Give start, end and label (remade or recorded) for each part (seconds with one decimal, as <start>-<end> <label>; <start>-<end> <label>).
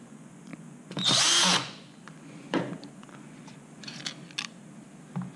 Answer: 0.0-4.0 remade; 4.0-5.4 recorded